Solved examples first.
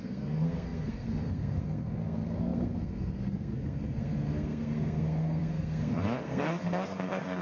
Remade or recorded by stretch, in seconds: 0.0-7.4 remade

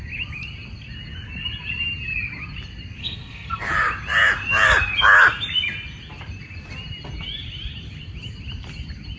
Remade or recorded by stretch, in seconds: 0.0-3.0 recorded; 3.0-3.6 remade; 3.6-9.2 recorded

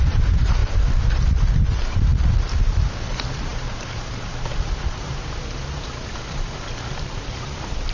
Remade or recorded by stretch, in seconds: 0.0-2.1 remade; 2.1-3.0 recorded; 3.0-7.9 remade

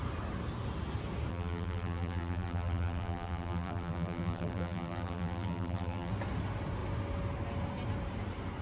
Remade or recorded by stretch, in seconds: 0.0-1.3 recorded; 1.3-6.1 remade; 6.1-8.6 recorded